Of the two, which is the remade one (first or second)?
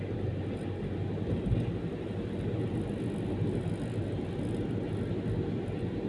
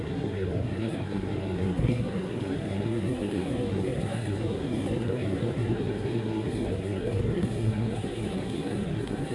second